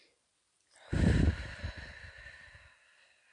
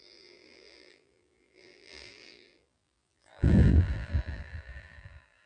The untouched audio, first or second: first